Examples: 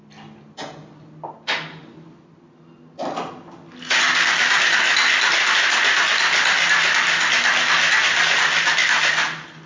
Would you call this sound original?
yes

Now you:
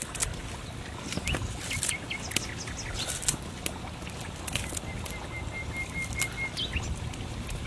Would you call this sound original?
yes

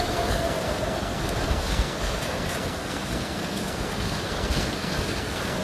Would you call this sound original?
no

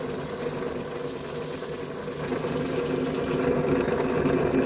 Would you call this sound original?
yes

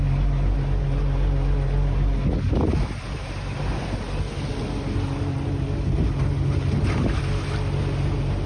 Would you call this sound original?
yes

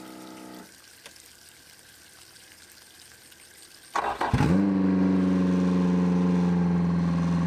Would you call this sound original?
yes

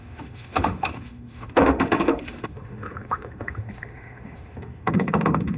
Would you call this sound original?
no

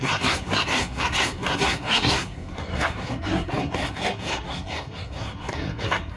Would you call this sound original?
no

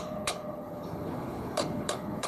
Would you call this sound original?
no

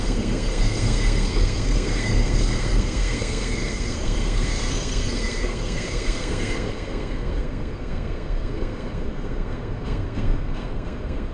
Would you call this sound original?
no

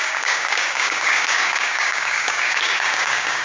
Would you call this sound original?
no